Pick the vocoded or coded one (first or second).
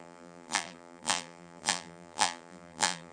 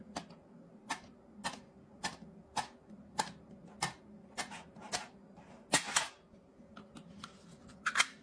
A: first